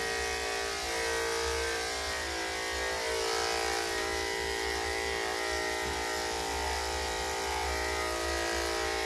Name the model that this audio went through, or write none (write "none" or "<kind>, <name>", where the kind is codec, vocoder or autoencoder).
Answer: none